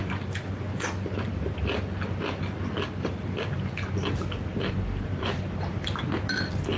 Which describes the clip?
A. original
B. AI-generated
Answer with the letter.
A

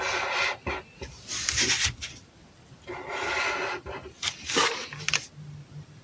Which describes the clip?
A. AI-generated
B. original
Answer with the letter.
B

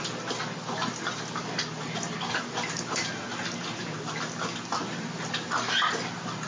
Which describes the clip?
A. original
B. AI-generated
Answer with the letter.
A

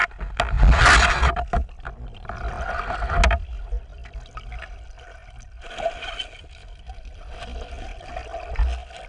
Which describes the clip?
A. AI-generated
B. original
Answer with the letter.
B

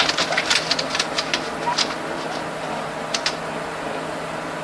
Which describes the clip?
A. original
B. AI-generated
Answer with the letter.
A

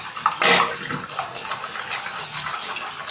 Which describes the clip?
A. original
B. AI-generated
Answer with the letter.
A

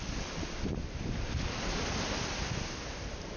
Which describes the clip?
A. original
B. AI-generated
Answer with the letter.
A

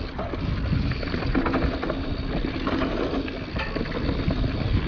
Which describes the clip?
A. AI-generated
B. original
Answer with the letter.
B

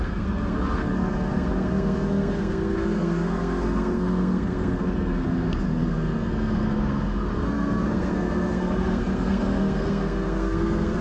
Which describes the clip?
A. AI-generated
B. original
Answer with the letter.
A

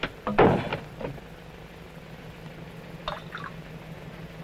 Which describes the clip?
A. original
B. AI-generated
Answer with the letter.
A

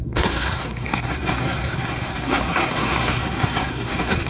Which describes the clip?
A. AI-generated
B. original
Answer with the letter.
A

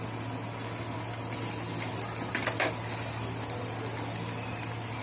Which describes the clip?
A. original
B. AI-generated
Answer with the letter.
B